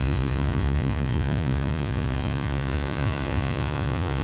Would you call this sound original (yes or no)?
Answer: no